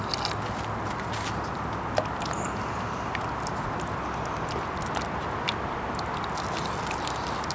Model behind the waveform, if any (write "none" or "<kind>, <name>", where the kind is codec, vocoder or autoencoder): none